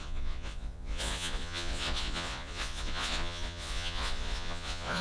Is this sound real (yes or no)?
no